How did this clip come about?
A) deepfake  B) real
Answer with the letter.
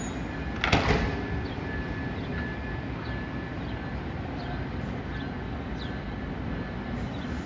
B